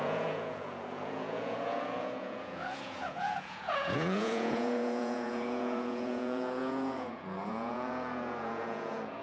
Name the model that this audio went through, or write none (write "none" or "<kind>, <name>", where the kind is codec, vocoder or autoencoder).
vocoder, Vocos